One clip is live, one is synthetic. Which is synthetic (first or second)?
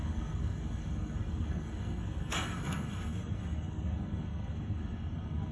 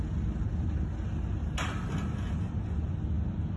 first